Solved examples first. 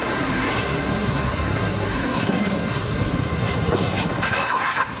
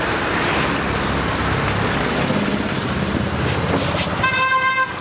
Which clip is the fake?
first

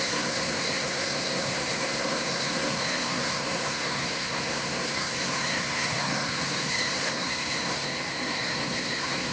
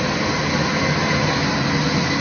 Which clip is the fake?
first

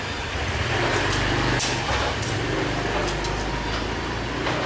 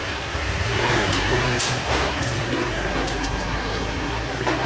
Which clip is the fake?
second